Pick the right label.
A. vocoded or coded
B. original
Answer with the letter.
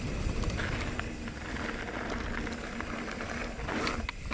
B